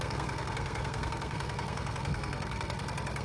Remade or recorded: remade